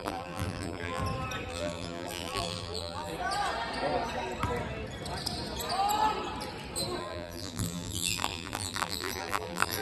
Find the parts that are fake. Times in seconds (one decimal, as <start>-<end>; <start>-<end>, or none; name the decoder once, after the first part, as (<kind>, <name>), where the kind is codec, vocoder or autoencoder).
0.0-1.0 (vocoder, BigVGAN v2); 1.5-3.1; 7.0-9.8